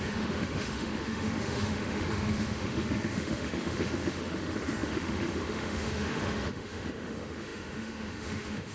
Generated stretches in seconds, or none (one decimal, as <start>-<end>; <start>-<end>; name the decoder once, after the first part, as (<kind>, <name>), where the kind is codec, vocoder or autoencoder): 0.0-8.7 (autoencoder, DAC-VAE)